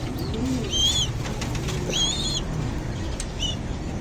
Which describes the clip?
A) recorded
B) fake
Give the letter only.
A